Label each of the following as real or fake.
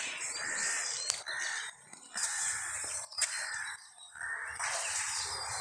real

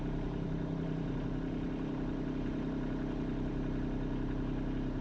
fake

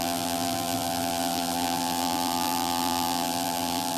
fake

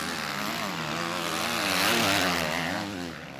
real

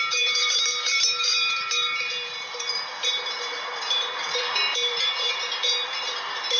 fake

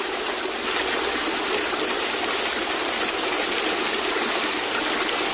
real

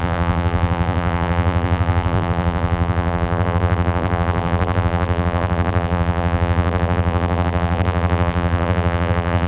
fake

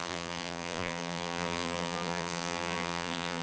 fake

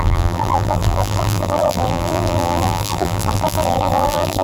fake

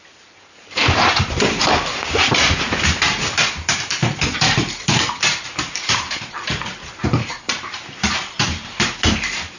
fake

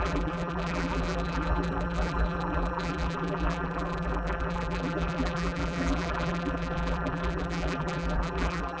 fake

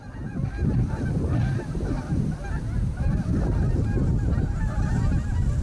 real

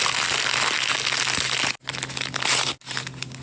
real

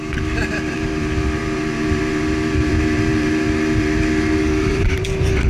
fake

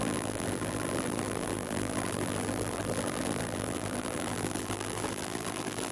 fake